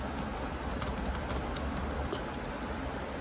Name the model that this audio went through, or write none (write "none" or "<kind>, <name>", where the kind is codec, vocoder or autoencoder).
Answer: none